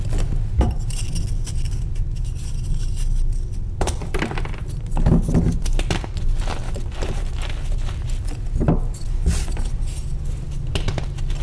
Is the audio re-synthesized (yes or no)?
no